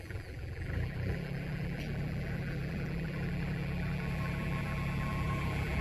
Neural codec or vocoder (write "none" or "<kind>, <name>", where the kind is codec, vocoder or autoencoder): vocoder, BigVGAN v2